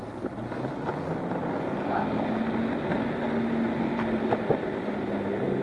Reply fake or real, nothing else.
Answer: real